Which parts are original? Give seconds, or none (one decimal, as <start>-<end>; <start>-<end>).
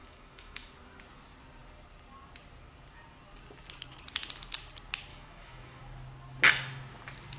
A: 0.7-5.1; 5.8-7.4